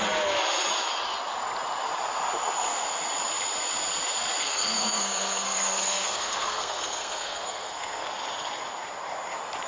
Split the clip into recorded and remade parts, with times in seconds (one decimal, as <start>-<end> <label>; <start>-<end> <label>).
0.0-4.4 recorded; 4.4-8.1 remade; 8.1-9.7 recorded